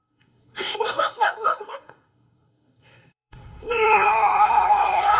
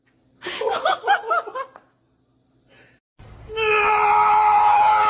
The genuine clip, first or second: second